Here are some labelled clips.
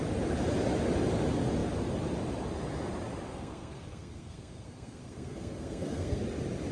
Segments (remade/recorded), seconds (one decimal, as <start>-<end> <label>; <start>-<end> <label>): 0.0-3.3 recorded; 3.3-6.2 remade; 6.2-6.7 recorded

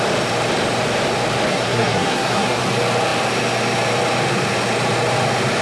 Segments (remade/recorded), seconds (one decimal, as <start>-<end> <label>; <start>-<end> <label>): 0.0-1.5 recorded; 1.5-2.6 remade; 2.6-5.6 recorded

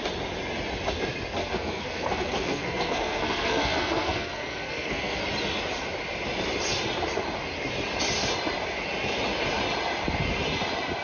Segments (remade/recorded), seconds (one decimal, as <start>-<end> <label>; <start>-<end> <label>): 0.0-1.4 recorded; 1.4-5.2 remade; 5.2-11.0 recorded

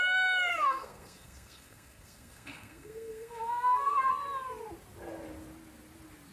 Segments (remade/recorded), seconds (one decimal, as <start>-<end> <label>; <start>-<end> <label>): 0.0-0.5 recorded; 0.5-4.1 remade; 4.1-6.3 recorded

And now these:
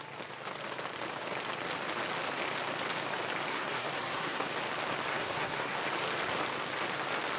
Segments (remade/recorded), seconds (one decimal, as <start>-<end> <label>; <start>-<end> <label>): 0.0-3.5 recorded; 3.5-4.5 remade; 4.5-5.1 recorded; 5.1-5.8 remade; 5.8-7.4 recorded

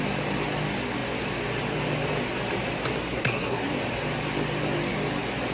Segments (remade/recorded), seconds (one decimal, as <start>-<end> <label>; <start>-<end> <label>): 0.0-3.0 recorded; 3.0-3.7 remade; 3.7-5.5 recorded

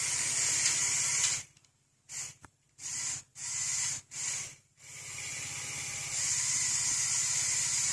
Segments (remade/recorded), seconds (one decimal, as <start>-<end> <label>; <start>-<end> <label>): 0.0-7.9 recorded

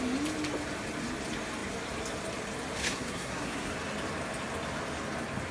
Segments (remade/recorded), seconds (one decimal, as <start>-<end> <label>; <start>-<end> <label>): 0.0-2.8 recorded; 2.8-3.7 remade; 3.7-5.5 recorded